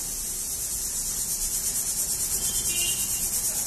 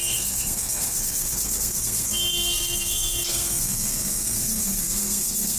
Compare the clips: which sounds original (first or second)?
first